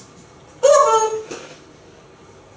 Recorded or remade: recorded